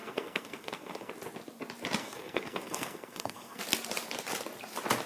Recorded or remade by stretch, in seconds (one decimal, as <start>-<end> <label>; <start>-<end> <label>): 0.0-1.1 remade; 1.1-2.0 recorded; 2.0-3.6 remade; 3.6-5.1 recorded